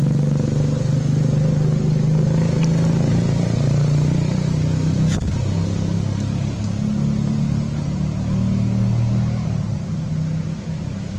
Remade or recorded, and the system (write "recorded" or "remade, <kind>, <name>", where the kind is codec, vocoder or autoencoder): recorded